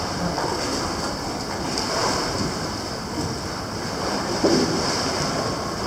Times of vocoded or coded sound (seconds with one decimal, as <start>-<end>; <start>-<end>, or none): none